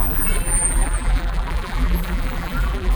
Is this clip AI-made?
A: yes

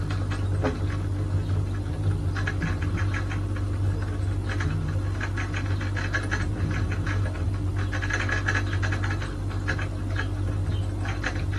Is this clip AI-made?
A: no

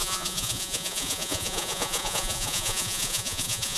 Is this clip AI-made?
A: yes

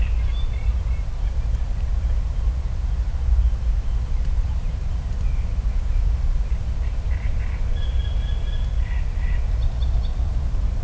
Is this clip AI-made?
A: no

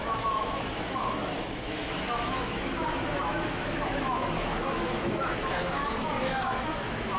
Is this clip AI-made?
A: yes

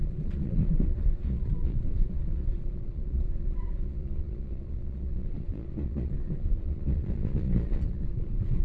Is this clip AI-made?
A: yes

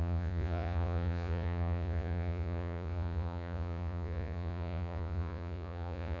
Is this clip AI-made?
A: yes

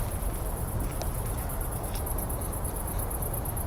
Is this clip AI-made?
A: no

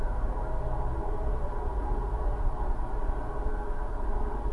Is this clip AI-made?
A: yes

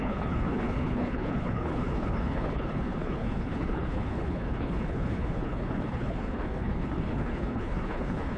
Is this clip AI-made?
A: yes